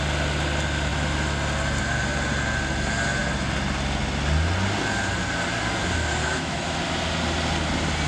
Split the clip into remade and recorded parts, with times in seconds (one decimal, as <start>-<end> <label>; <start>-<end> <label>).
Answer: 0.0-6.2 recorded; 6.2-6.8 remade; 6.8-8.1 recorded